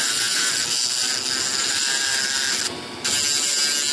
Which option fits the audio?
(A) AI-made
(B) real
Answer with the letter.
B